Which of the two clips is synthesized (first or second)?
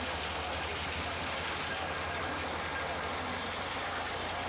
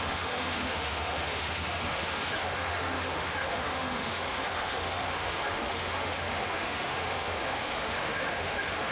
second